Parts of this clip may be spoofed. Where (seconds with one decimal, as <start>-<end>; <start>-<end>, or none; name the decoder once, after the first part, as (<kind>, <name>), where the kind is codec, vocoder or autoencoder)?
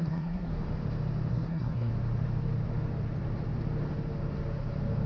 0.0-0.5 (codec, SNAC); 1.3-1.9